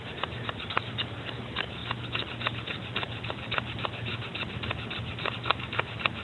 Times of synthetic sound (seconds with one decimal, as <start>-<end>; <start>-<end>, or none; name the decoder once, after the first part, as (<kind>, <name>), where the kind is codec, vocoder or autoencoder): 0.0-1.8 (vocoder, BigVGAN v2); 5.3-6.2